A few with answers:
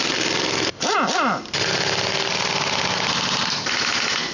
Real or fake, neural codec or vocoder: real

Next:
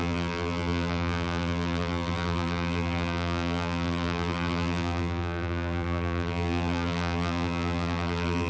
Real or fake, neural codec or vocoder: fake, vocoder, BigVGAN v2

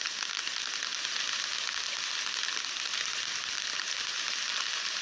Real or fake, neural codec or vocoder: real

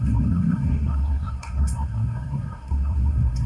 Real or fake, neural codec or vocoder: fake, codec, SNAC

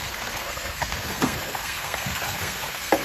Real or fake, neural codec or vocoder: fake, codec, SNAC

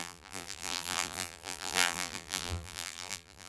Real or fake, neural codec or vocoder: fake, vocoder, BigVGAN v2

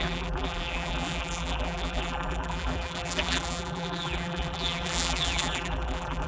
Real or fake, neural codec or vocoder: fake, vocoder, BigVGAN v2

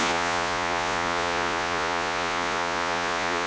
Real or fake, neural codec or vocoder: fake, vocoder, Vocos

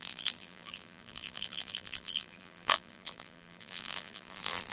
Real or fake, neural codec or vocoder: fake, vocoder, BigVGAN v2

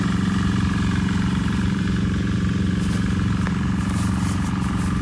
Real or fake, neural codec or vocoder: fake, vocoder, BigVGAN v2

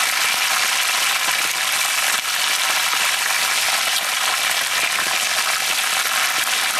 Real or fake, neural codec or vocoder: real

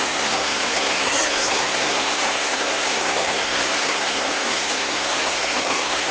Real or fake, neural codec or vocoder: fake, codec, SNAC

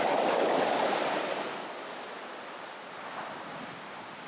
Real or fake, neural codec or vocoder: real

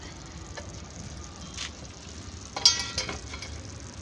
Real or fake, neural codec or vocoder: real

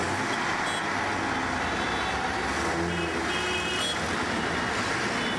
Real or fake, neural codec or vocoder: real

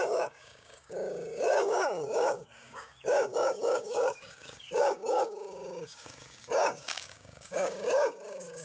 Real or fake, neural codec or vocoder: fake, codec, DAC